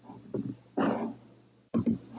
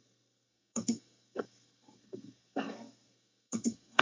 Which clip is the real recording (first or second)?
first